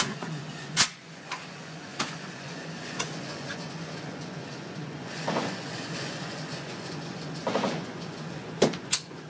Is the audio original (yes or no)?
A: no